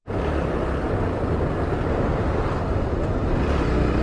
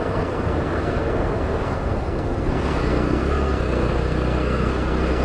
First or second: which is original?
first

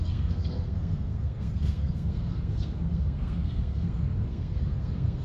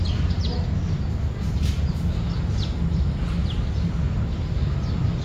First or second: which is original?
second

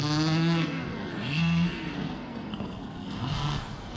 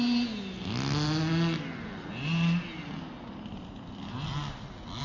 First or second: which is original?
second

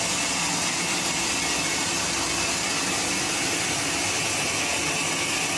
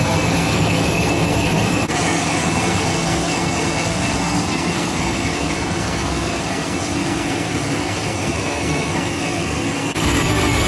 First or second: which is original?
first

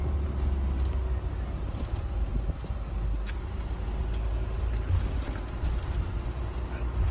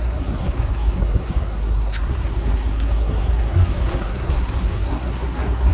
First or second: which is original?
first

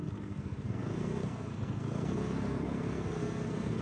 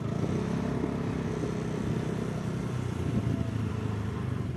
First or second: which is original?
second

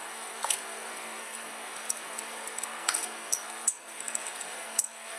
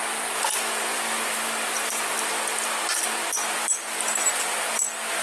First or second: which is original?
second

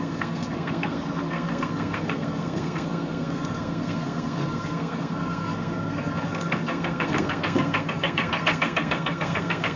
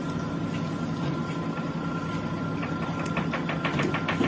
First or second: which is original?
second